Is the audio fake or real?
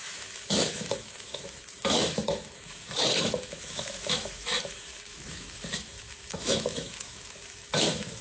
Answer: fake